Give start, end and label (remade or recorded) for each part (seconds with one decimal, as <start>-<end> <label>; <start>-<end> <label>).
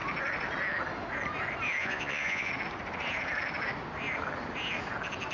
0.0-1.8 recorded; 1.8-2.5 remade; 2.5-5.3 recorded